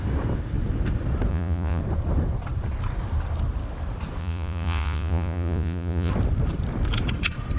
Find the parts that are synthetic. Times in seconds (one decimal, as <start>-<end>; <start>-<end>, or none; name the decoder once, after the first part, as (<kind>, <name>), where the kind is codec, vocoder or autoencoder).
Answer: 1.3-1.8 (vocoder, Vocos); 4.2-6.1